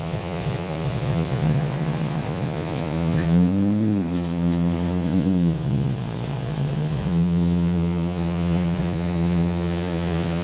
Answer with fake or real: fake